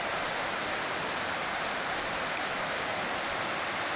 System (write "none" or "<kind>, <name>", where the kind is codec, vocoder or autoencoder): vocoder, BigVGAN v2